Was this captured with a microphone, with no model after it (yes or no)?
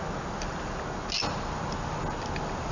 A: yes